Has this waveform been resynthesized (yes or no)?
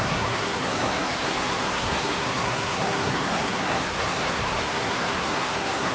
yes